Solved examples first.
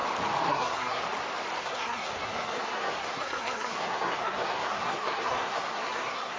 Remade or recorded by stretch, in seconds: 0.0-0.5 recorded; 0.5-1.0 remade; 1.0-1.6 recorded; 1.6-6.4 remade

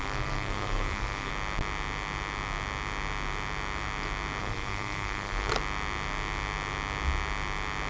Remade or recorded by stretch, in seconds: 0.0-1.3 remade; 1.3-4.4 recorded; 4.4-5.5 remade; 5.5-7.9 recorded